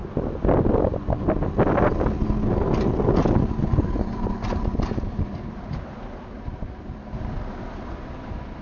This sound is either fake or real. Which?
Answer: real